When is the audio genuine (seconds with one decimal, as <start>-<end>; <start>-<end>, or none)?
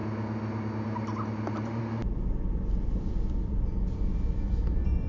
0.0-5.1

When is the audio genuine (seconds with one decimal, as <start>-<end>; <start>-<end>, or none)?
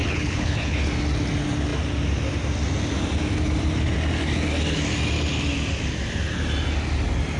0.9-7.4